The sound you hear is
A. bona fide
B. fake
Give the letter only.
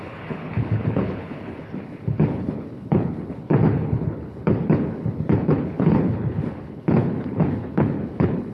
B